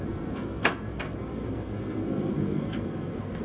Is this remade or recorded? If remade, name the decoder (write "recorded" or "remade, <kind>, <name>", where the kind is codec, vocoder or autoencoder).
remade, codec, SNAC